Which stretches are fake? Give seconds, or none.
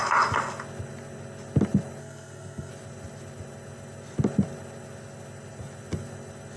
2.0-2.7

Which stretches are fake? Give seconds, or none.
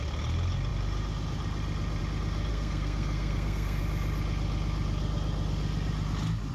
2.5-3.8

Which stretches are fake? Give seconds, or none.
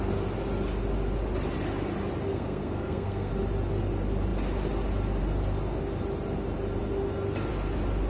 2.3-3.3